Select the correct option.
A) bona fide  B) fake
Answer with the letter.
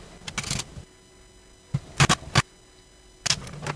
A